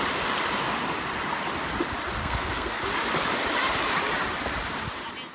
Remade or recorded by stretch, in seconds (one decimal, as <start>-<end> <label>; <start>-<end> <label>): 0.0-2.2 recorded; 2.2-2.8 remade; 2.8-5.3 recorded